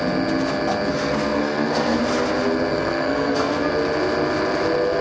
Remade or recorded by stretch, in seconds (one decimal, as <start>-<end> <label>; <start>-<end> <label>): 0.0-0.9 recorded; 0.9-2.0 remade; 2.0-2.7 recorded; 2.7-3.7 remade; 3.7-5.0 recorded